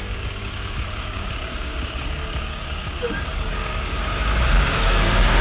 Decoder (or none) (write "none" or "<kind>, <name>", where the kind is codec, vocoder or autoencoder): codec, DAC